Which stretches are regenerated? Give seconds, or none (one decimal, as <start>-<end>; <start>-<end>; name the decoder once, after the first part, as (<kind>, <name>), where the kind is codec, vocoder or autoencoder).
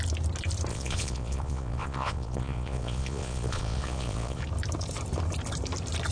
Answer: 0.7-4.4 (vocoder, Vocos)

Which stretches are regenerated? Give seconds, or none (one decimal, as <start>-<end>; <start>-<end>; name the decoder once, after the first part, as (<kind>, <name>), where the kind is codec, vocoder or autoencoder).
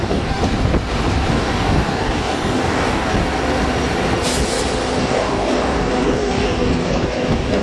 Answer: 0.0-0.4 (codec, DAC); 1.3-3.1; 5.0-7.6